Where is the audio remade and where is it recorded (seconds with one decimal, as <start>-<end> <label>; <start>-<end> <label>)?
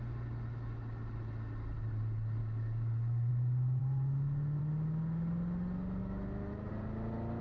0.0-2.4 recorded; 2.4-3.3 remade; 3.3-6.0 recorded; 6.0-6.7 remade; 6.7-7.4 recorded